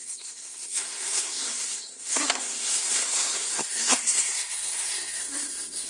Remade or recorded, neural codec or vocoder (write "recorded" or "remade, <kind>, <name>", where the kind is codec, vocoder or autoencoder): remade, codec, SNAC